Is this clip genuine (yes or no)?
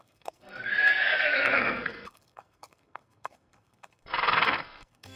no